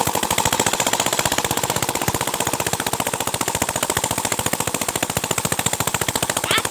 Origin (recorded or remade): recorded